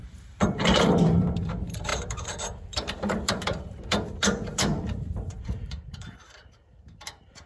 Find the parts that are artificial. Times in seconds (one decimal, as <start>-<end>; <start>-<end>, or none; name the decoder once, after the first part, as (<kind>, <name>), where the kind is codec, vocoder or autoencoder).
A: 0.0-7.5 (vocoder, BigVGAN v2)